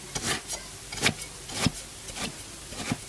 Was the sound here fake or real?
real